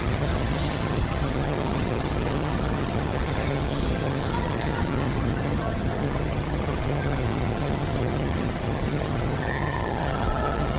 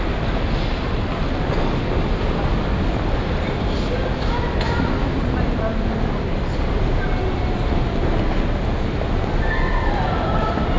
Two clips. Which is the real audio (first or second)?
second